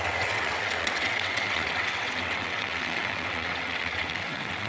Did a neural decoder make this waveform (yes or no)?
yes